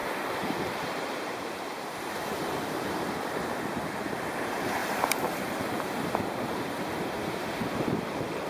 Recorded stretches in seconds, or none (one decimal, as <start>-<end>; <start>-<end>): 3.6-4.8; 5.5-7.2